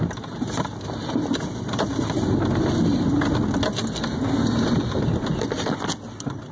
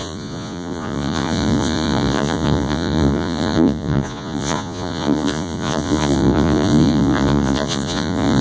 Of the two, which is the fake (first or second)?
second